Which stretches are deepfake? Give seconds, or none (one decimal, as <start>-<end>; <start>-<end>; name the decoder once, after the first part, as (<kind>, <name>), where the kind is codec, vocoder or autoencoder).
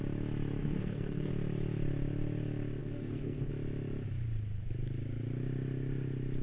0.6-1.3 (codec, SNAC); 2.8-3.5